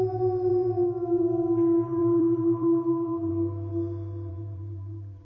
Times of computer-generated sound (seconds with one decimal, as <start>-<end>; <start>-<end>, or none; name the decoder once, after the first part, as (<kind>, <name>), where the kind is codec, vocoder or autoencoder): 2.0-3.3 (vocoder, BigVGAN v2); 4.3-5.2